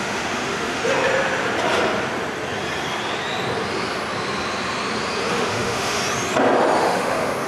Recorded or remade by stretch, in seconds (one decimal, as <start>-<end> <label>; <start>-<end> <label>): 0.0-0.8 remade; 0.8-5.3 recorded; 5.3-6.0 remade; 6.0-6.8 recorded; 6.8-7.5 remade